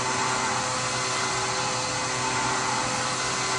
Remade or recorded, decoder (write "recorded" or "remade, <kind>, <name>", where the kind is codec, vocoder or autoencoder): recorded